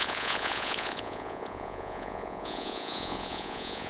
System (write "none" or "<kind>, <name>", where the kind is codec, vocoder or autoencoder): vocoder, Vocos